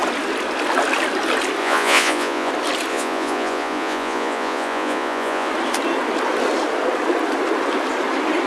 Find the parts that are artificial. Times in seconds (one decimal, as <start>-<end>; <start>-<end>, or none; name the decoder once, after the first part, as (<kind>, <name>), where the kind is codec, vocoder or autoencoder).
1.6-2.5 (vocoder, Vocos); 2.9-5.5